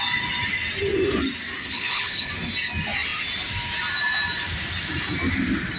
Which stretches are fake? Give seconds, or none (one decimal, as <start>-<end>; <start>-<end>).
1.6-2.3